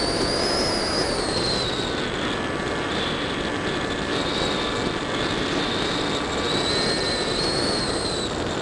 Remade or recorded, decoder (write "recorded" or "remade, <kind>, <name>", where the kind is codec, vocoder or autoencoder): recorded